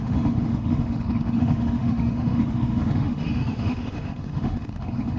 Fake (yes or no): yes